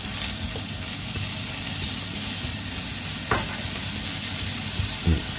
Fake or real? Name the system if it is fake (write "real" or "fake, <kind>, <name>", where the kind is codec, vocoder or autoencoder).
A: real